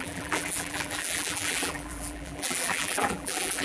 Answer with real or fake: fake